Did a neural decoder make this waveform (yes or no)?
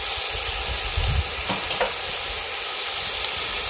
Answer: no